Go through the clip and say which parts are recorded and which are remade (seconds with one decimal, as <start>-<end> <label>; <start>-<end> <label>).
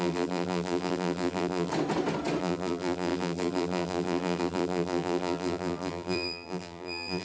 0.0-1.7 remade; 1.7-2.4 recorded; 2.4-7.2 remade